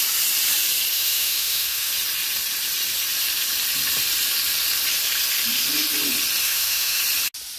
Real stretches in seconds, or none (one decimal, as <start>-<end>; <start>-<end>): 0.0-0.9; 1.9-6.4; 7.0-7.6